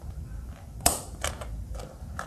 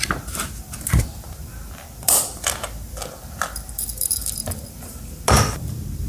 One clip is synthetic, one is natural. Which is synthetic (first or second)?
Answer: first